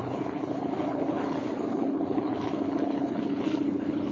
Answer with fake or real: fake